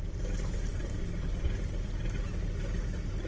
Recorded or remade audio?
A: recorded